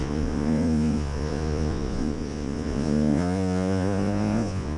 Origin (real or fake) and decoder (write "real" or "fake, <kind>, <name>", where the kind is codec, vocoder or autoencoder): fake, vocoder, Vocos